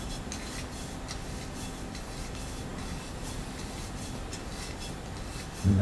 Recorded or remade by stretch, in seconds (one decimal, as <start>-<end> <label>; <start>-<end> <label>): 0.0-5.8 recorded